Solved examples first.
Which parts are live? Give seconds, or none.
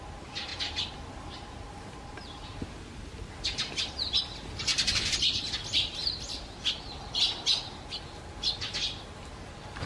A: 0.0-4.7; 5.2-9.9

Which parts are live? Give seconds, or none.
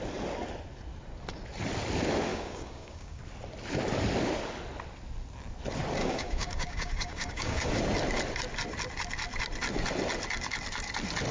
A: 0.0-2.3; 3.2-6.0; 7.7-11.3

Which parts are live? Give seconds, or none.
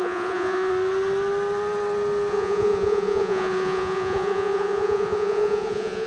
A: 0.7-2.3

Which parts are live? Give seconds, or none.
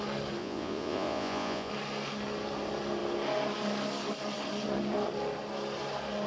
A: 0.0-0.4; 1.7-6.3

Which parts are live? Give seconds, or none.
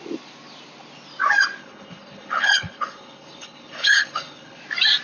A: 0.0-1.6; 4.6-5.0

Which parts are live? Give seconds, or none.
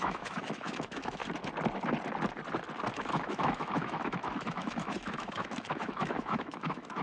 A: 1.2-2.9